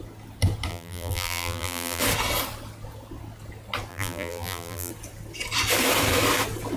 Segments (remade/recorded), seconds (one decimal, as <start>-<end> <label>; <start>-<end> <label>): 0.0-0.7 recorded; 0.7-2.0 remade; 2.0-3.9 recorded; 3.9-4.9 remade; 4.9-6.8 recorded